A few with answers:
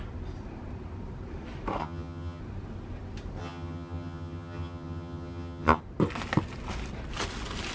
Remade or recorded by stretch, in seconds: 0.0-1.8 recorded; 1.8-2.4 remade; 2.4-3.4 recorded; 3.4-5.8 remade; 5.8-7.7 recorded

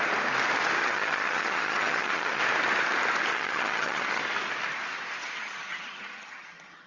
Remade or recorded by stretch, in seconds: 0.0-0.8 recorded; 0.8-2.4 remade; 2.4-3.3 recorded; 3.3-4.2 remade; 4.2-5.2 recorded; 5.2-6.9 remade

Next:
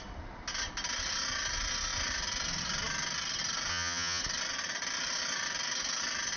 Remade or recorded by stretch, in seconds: 0.0-3.7 recorded; 3.7-4.2 remade; 4.2-6.4 recorded

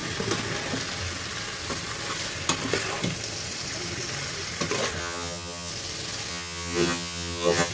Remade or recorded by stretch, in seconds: 0.0-5.0 recorded; 5.0-5.7 remade; 5.7-6.3 recorded; 6.3-7.7 remade